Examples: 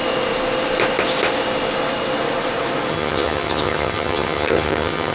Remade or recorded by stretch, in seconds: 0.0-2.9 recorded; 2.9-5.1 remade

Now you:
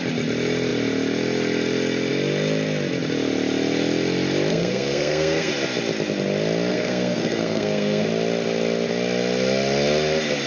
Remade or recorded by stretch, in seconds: 0.0-4.5 recorded; 4.5-5.5 remade; 5.5-6.7 recorded; 6.7-8.1 remade; 8.1-10.5 recorded

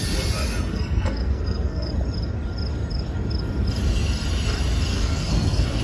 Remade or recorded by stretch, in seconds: 0.0-0.7 recorded; 0.7-1.9 remade; 1.9-4.9 recorded; 4.9-5.8 remade

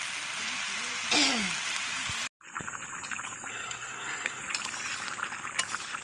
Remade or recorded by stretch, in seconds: 0.0-3.5 recorded; 3.5-4.4 remade; 4.4-6.0 recorded

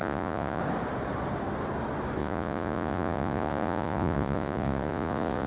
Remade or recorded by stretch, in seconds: 0.0-0.6 remade; 0.6-2.2 recorded; 2.2-5.5 remade

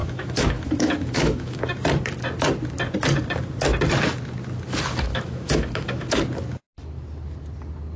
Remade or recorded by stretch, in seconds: 0.0-1.6 remade; 1.6-5.1 recorded; 5.1-6.2 remade; 6.2-8.0 recorded